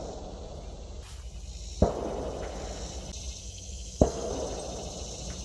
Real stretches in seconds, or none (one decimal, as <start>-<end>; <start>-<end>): 0.0-3.4; 4.3-5.4